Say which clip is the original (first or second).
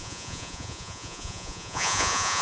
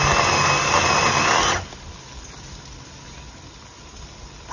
second